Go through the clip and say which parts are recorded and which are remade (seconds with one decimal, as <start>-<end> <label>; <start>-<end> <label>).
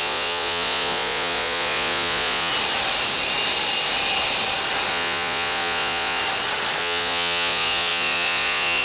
0.0-2.5 remade; 2.5-4.9 recorded; 4.9-6.2 remade; 6.2-6.8 recorded; 6.8-8.8 remade